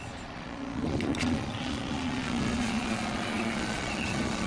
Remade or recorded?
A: remade